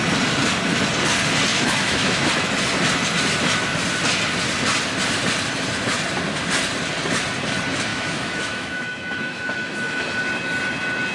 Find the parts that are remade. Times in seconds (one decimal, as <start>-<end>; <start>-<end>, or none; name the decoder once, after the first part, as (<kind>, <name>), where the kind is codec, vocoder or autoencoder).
1.5-2.3 (autoencoder, DAC-VAE); 7.9-10.2